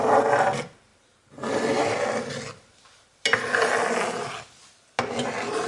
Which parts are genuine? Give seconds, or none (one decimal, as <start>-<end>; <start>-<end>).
0.0-5.7